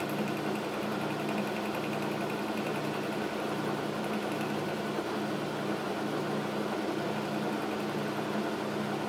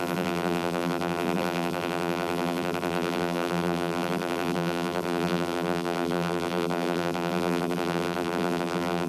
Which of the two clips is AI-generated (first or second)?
second